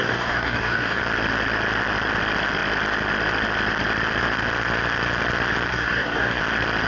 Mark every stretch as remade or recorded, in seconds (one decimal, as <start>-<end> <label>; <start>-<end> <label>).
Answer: 0.0-1.0 remade; 1.0-5.7 recorded; 5.7-6.4 remade; 6.4-6.9 recorded